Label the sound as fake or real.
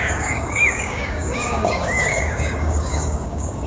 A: fake